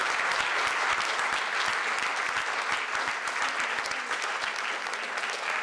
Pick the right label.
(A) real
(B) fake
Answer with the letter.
A